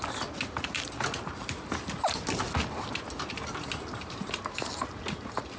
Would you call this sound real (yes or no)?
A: yes